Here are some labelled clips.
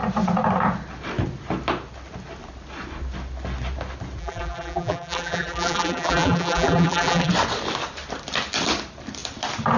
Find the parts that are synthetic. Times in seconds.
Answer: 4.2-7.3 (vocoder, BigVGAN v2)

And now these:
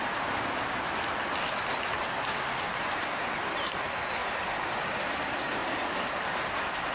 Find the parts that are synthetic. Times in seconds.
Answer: none

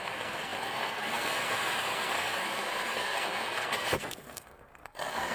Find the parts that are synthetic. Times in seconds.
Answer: 0.0-5.3 (codec, SNAC)

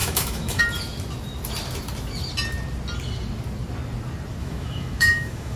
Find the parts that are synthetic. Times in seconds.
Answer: 0.0-0.6 (autoencoder, DAC-VAE); 4.4-5.6

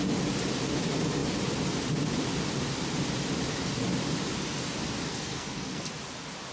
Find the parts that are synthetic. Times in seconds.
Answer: 5.1-5.9 (codec, SNAC)